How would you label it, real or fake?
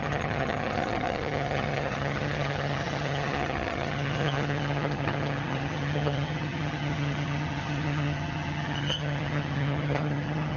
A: fake